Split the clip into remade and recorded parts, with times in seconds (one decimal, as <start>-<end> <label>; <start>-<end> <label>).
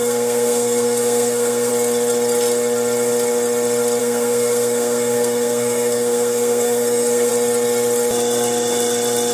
0.0-1.7 remade; 1.7-4.0 recorded; 4.0-7.3 remade; 7.3-9.3 recorded